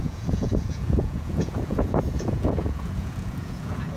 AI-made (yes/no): yes